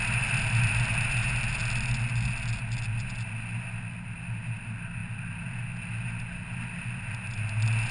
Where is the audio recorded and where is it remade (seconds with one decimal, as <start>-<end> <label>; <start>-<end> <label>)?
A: 0.0-7.9 recorded